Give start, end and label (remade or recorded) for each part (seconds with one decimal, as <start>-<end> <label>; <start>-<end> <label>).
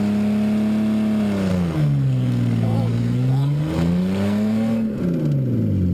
0.0-1.5 recorded; 1.5-5.0 remade; 5.0-5.9 recorded